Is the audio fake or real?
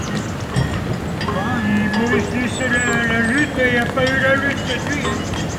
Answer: real